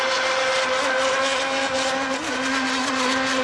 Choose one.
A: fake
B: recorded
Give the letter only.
B